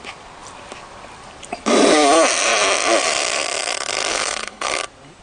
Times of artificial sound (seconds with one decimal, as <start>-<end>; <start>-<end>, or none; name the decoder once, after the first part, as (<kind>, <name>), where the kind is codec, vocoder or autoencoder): 4.1-4.7 (codec, HILCodec)